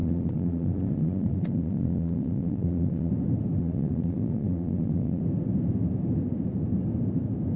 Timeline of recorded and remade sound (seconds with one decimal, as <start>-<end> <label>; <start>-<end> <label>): 0.0-3.1 remade; 3.1-3.6 recorded; 3.6-5.2 remade; 5.2-7.6 recorded